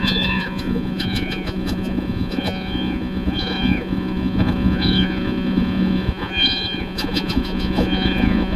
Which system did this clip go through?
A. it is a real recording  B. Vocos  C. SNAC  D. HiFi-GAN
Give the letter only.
B